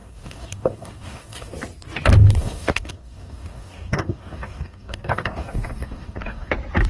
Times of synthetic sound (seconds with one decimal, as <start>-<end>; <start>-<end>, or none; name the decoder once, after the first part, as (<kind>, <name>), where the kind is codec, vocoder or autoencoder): 0.0-1.5 (codec, DAC); 2.4-6.5

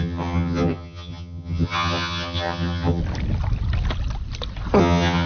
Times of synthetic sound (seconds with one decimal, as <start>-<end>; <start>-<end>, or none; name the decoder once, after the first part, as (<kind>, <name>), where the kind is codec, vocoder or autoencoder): 0.0-3.0 (vocoder, HiFi-GAN); 4.8-5.3

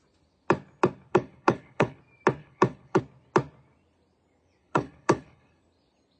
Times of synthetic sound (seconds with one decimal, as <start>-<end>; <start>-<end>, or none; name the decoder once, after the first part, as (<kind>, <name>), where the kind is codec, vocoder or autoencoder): 1.1-2.0 (codec, HILCodec); 2.4-3.0; 4.6-5.6

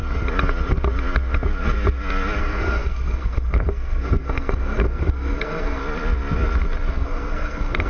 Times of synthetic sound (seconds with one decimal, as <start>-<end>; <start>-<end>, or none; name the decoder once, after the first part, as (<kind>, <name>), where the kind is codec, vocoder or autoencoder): 2.4-5.8 (codec, SNAC); 6.9-7.9

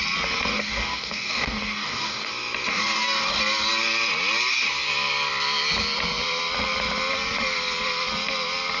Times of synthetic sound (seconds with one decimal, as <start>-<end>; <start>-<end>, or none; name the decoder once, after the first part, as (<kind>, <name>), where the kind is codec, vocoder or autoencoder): 0.5-2.3 (codec, DAC); 2.7-3.4

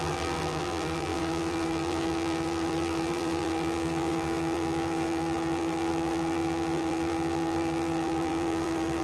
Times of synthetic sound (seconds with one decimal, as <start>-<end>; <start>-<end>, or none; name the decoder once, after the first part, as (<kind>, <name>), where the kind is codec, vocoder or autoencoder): 0.0-9.0 (vocoder, BigVGAN v2)

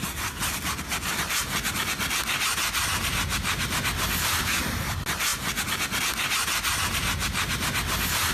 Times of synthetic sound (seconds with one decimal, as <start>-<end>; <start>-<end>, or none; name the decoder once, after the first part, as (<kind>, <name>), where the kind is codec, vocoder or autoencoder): none

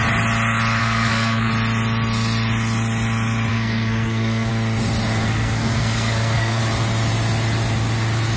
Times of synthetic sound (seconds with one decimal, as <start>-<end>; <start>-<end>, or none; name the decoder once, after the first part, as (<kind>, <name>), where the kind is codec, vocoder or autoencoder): 0.8-1.5 (codec, SNAC); 3.5-4.5; 5.2-6.6